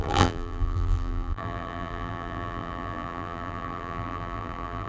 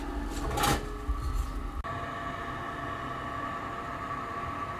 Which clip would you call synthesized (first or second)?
first